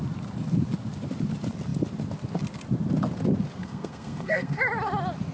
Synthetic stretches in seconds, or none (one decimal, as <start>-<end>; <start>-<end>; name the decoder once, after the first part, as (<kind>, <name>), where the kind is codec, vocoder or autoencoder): 3.6-4.6 (codec, SNAC)

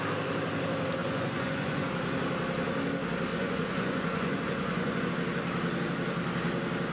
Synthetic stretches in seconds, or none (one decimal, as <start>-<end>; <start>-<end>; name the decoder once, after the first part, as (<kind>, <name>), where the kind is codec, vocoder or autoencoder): 1.0-1.9 (vocoder, Vocos); 3.3-5.1

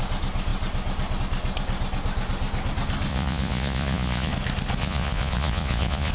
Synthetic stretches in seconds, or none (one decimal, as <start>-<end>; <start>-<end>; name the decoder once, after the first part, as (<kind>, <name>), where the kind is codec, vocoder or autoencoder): 3.1-4.3 (vocoder, Vocos); 4.8-6.1

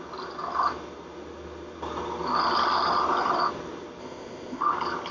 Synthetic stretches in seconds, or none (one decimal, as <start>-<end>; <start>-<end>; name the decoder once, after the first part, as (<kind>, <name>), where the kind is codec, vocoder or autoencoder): 4.0-4.6 (codec, ZipCodec)

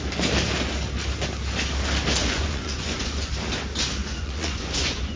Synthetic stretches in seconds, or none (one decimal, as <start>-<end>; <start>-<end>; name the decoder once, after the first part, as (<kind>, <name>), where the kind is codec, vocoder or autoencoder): 2.2-3.3 (vocoder, Vocos); 4.0-5.2

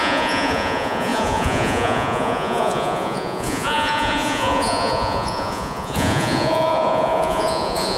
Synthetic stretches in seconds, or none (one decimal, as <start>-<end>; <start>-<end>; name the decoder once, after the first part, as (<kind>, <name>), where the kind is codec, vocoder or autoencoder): 0.0-8.0 (vocoder, Vocos)

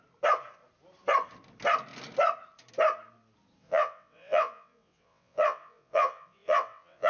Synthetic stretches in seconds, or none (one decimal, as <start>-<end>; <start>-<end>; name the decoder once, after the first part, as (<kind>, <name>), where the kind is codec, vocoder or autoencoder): 3.6-7.1 (vocoder, WaveNeXt)